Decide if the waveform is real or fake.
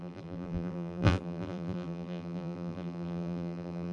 fake